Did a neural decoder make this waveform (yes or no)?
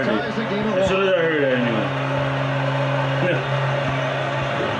no